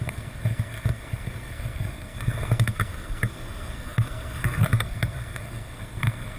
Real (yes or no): no